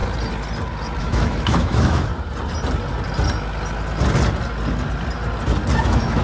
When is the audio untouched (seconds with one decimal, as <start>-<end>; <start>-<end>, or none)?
0.0-1.0; 2.1-5.8